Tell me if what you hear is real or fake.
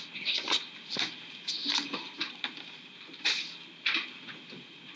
real